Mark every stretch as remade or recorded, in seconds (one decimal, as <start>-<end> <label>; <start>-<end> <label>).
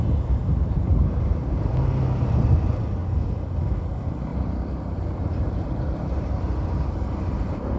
0.0-0.4 recorded; 0.4-1.7 remade; 1.7-4.3 recorded; 4.3-6.4 remade; 6.4-7.8 recorded